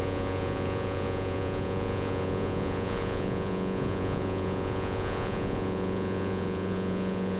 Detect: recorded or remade remade